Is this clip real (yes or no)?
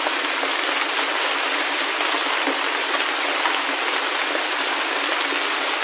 yes